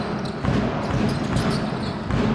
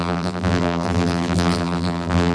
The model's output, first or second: second